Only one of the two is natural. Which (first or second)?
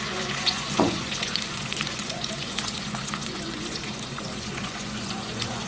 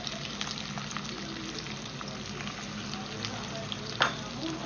second